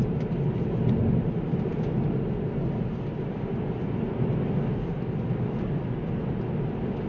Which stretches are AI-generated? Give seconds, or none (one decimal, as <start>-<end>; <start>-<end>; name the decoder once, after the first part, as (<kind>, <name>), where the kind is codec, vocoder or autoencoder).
none